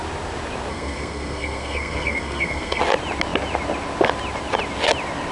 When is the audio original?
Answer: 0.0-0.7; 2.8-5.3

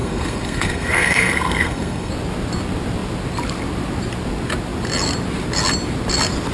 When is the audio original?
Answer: 2.1-6.5

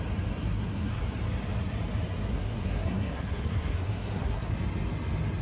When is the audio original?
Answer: 0.0-0.4; 1.0-2.3; 4.5-5.4

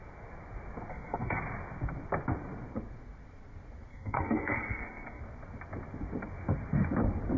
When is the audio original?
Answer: 0.0-0.9; 1.4-3.9; 5.2-7.4

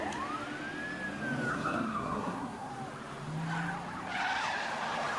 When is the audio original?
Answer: 0.0-1.5; 2.7-5.2

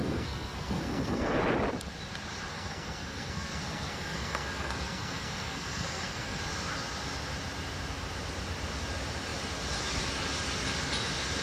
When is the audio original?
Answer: 1.4-2.5; 6.4-11.4

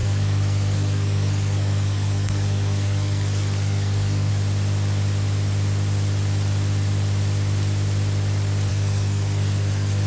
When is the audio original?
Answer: 4.3-8.7